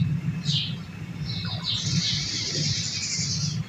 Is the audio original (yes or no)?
yes